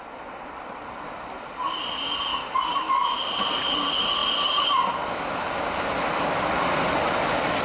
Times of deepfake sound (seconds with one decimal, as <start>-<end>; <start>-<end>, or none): none